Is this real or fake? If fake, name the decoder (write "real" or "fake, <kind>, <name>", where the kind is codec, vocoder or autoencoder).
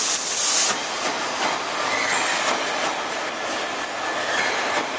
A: real